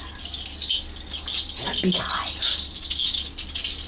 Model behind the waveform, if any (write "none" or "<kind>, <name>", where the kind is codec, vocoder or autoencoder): none